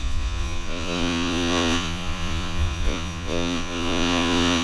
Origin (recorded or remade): remade